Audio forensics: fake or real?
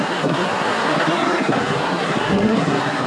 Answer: fake